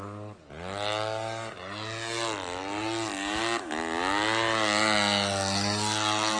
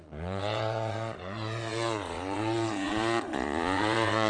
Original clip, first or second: first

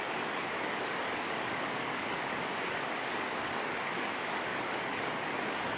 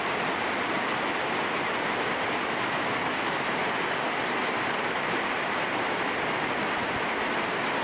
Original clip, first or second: second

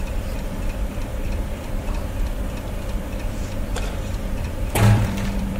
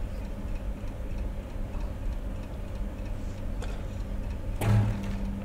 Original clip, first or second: second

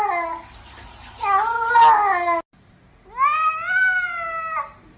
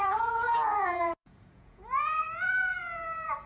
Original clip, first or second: first